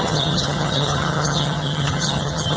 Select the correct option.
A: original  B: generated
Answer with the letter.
B